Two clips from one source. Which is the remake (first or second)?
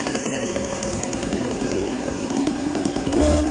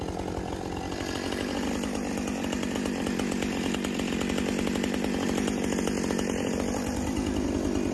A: first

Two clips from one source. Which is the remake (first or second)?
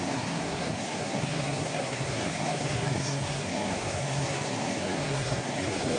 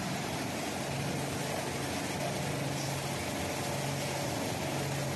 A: first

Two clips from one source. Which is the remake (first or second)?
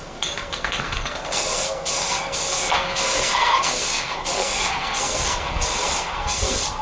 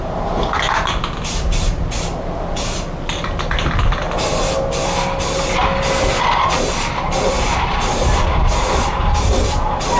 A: first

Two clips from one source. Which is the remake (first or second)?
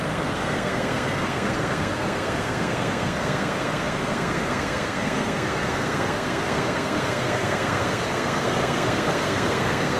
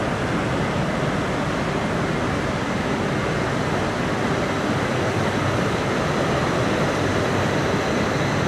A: first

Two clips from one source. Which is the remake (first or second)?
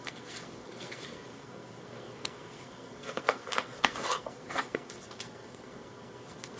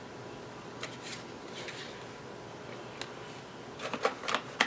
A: first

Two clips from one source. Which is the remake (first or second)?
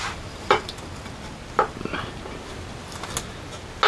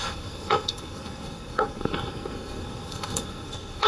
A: second